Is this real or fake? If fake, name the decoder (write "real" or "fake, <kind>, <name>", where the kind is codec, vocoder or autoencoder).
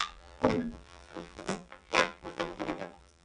fake, vocoder, BigVGAN v2